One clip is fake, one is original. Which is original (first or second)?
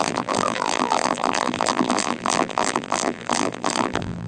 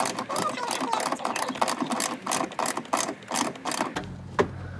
second